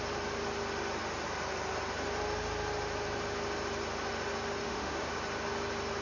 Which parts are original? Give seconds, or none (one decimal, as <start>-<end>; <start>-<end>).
0.0-4.6; 5.1-6.0

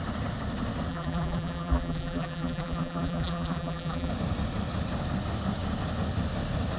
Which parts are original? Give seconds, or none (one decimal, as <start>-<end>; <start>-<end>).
0.0-0.9; 4.1-6.8

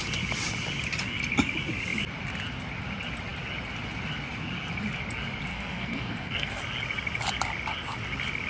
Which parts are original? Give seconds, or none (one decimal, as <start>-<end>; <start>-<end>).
0.0-5.5; 6.6-8.5

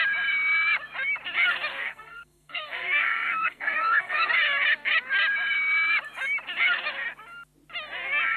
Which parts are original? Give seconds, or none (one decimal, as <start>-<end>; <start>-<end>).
0.0-1.7; 4.3-8.4

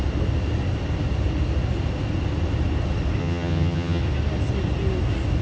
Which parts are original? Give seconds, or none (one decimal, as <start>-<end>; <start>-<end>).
0.0-3.2; 4.0-5.4